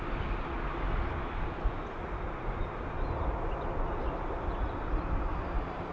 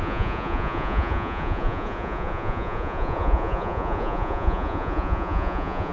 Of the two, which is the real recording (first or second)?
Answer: first